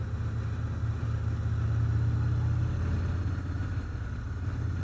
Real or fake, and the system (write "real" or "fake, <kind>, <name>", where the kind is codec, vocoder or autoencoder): real